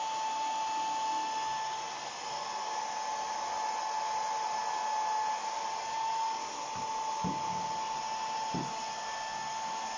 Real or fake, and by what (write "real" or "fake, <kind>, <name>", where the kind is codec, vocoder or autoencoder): real